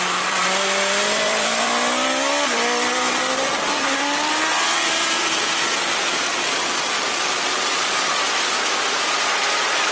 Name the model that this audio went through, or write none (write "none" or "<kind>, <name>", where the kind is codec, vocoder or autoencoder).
vocoder, BigVGAN v2